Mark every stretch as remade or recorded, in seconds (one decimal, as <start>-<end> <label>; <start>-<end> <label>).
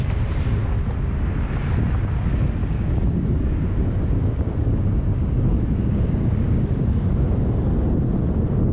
0.0-2.6 recorded; 2.6-7.5 remade; 7.5-8.7 recorded